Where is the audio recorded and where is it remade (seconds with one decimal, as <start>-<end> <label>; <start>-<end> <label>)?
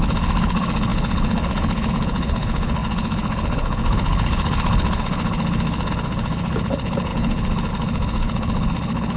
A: 0.0-9.2 remade